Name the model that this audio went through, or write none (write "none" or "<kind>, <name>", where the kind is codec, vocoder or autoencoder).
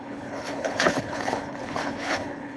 codec, HILCodec